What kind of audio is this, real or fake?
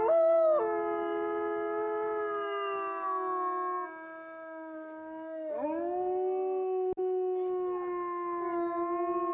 real